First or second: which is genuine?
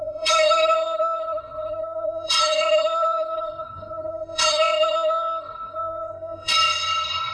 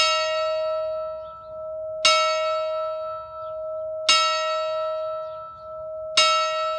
second